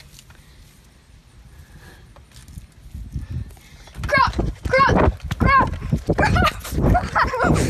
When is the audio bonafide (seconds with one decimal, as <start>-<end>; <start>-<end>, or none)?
0.0-7.7